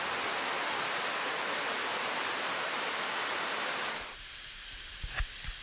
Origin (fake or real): real